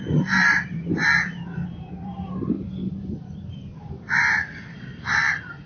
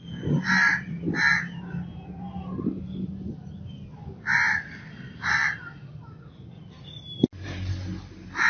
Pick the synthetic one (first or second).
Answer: first